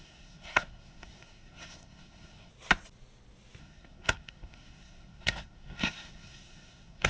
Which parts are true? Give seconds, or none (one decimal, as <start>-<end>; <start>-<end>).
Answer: 2.5-3.6